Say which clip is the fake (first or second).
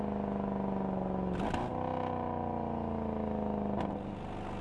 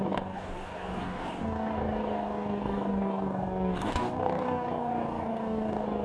second